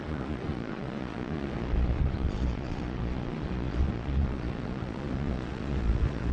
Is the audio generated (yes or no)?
yes